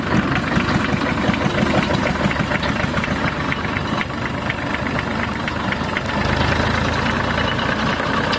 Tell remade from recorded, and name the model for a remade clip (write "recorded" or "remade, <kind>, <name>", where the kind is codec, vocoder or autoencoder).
recorded